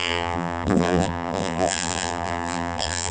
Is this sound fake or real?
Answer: fake